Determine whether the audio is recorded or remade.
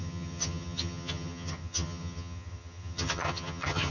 remade